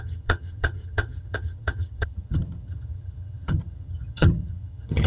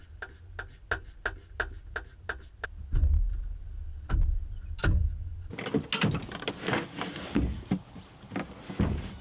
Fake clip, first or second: first